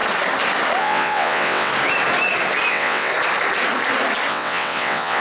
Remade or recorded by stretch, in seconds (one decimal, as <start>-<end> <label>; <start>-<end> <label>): 0.0-0.8 recorded; 0.8-1.7 remade; 1.7-2.7 recorded; 2.7-3.1 remade; 3.1-4.3 recorded; 4.3-5.2 remade